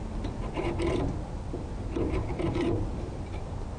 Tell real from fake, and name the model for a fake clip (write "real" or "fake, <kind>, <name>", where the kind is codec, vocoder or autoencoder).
real